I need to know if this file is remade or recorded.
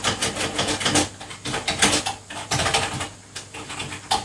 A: recorded